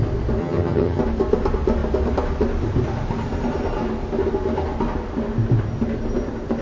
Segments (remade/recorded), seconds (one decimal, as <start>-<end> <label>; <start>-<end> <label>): 0.0-0.4 recorded; 0.4-1.0 remade; 1.0-6.6 recorded